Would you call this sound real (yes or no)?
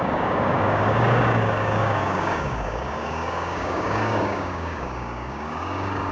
no